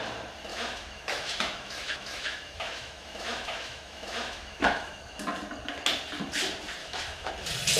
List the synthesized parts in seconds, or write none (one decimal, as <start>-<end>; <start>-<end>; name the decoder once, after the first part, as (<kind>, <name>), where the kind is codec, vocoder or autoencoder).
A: 0.5-5.2 (autoencoder, DAC-VAE); 6.8-7.3